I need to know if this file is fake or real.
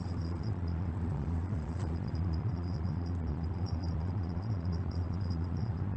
fake